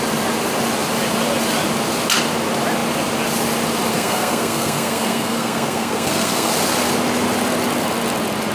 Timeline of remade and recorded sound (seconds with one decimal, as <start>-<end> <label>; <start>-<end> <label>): 0.0-3.9 recorded; 3.9-6.5 remade; 6.5-8.5 recorded